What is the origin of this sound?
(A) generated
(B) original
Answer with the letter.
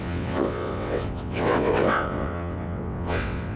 A